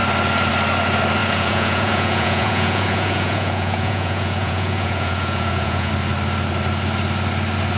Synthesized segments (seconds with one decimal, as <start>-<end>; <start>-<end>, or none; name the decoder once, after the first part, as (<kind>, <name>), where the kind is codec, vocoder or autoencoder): 1.2-5.9 (vocoder, Vocos)